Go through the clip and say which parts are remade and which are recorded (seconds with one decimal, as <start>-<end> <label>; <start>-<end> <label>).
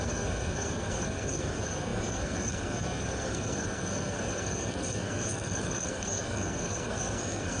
0.0-7.6 remade